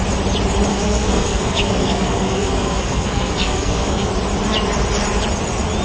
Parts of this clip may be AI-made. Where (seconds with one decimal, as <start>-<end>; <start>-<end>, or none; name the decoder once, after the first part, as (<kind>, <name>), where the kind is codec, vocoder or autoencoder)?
0.7-4.1 (codec, SNAC)